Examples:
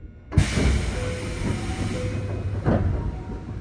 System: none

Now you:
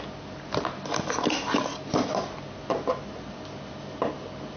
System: none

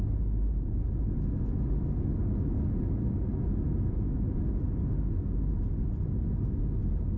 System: none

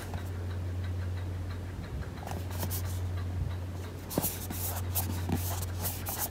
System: none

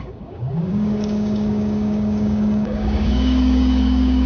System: codec, DAC